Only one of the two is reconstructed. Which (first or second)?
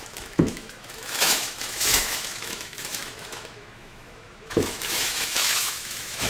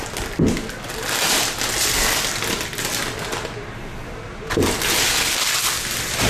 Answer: first